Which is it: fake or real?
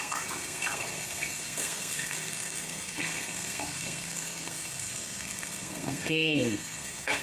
fake